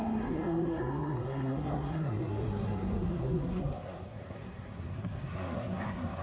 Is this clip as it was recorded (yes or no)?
no